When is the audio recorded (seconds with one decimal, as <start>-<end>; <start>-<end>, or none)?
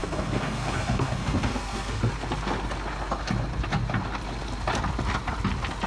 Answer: 2.0-5.9